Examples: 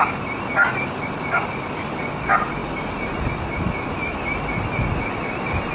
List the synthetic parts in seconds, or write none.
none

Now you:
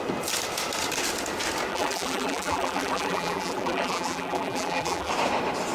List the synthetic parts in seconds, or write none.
1.7-5.1 (vocoder, BigVGAN v2)

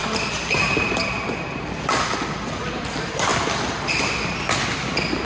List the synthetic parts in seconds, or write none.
none